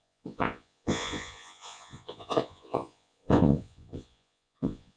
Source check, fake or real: fake